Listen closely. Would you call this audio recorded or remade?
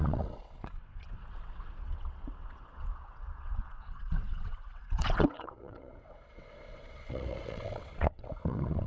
remade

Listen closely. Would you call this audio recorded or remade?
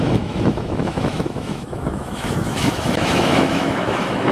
remade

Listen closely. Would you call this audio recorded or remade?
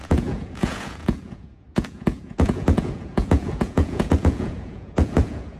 remade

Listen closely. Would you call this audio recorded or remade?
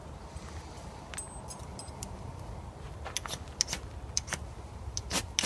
recorded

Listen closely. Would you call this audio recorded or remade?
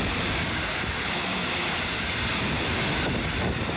recorded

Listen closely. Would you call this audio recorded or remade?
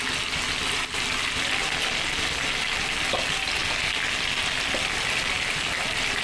recorded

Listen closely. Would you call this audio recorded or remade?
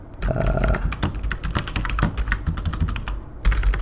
recorded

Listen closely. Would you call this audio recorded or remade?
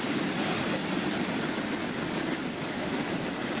recorded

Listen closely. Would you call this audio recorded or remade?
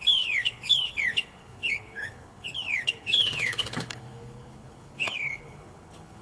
remade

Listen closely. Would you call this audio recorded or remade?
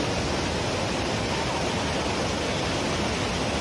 recorded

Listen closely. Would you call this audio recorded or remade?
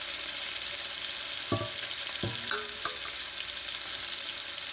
recorded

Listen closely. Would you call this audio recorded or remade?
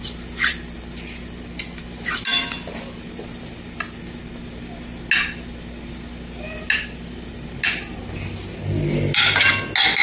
recorded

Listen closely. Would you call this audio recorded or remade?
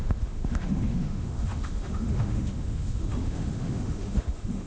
remade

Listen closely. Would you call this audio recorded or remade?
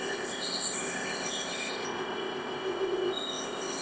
remade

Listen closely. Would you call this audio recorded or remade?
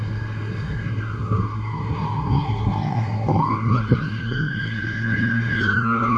remade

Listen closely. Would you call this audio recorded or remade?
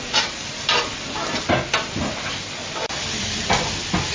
recorded